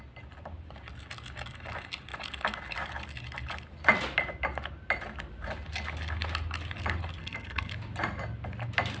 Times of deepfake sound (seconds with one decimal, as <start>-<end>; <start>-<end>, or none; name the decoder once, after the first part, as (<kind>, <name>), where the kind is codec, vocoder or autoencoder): 7.2-7.7 (codec, SNAC)